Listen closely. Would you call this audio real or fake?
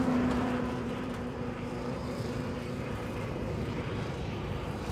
fake